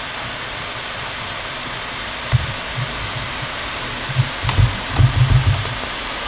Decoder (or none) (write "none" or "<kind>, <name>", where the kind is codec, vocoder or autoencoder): none